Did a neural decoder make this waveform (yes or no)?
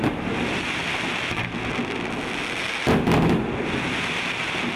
no